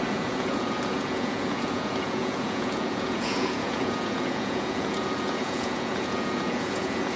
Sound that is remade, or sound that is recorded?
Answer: remade